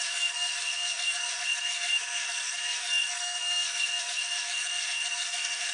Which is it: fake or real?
fake